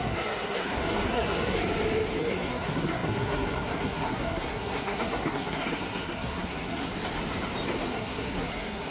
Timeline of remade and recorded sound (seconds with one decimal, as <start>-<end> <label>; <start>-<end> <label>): 0.0-1.6 remade; 1.6-2.2 recorded; 2.2-6.9 remade; 6.9-7.9 recorded; 7.9-8.9 remade